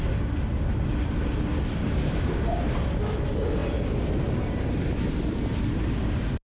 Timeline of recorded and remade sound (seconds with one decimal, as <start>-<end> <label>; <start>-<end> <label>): 0.0-1.8 recorded; 1.8-2.6 remade; 2.6-6.4 recorded